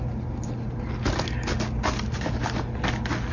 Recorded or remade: recorded